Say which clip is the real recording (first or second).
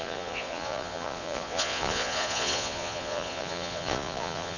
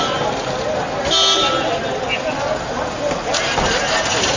second